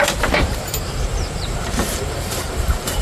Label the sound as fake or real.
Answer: fake